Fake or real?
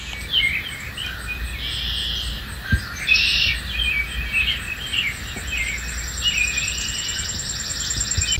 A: real